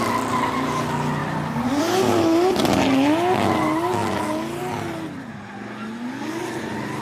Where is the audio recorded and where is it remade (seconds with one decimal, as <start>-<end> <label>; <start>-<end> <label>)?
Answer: 0.0-1.2 recorded; 1.2-1.8 remade; 1.8-7.0 recorded